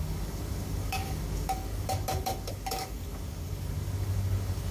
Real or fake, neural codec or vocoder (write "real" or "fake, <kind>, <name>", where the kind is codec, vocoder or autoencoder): fake, codec, DAC